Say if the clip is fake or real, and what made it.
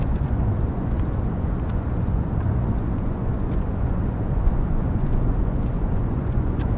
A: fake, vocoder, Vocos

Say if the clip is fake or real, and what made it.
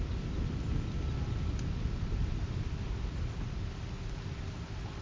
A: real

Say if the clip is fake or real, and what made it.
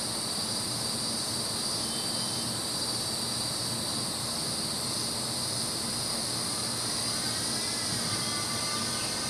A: real